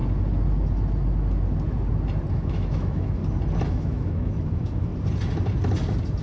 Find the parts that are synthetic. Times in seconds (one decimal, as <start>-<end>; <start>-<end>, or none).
2.3-3.2; 3.7-4.9